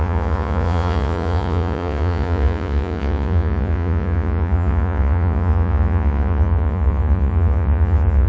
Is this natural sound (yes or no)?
no